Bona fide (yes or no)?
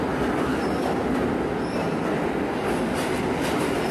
yes